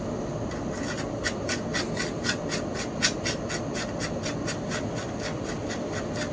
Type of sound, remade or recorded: recorded